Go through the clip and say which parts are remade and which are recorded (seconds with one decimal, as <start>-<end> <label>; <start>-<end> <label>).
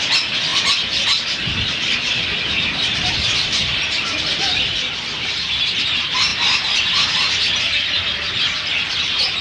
0.0-0.5 recorded; 0.5-5.6 remade; 5.6-9.4 recorded